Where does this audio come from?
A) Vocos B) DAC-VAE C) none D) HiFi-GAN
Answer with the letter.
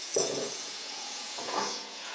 A